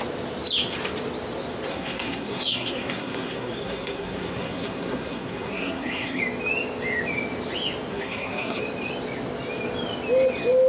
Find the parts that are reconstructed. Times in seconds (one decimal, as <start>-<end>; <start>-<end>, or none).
1.7-6.2; 7.9-8.6